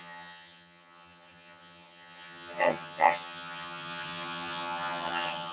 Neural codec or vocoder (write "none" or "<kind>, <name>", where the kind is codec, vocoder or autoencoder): vocoder, HiFi-GAN